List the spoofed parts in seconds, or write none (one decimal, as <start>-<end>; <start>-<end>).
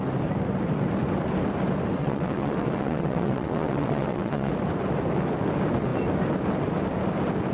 2.0-4.5